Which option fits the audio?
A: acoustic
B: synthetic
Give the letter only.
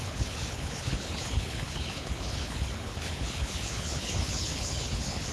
B